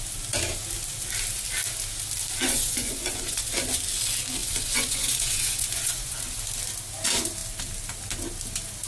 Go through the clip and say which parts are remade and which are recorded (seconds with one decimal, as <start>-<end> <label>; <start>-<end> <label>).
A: 0.0-2.4 recorded; 2.4-3.8 remade; 3.8-4.4 recorded; 4.4-6.2 remade; 6.2-8.9 recorded